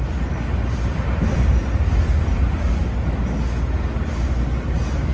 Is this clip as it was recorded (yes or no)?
yes